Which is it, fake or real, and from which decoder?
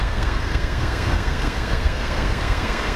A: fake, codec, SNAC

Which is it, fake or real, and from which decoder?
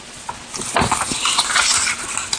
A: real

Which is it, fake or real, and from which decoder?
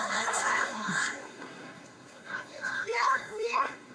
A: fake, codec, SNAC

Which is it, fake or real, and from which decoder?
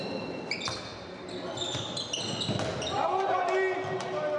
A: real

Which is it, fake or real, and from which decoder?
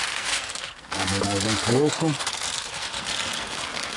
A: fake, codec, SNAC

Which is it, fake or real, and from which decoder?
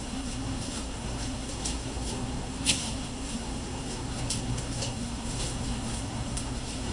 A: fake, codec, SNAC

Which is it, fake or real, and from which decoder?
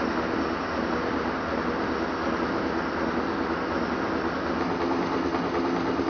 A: real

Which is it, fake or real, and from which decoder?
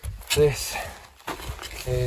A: real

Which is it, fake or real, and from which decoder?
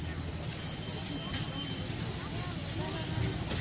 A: real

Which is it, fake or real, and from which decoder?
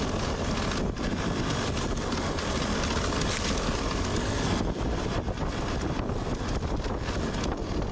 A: real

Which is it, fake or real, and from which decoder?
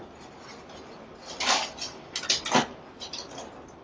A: real